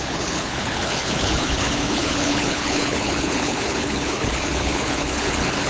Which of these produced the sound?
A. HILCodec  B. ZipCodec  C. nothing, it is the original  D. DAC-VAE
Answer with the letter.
A